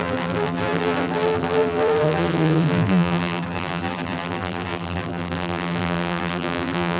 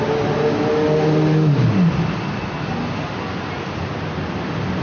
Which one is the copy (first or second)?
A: first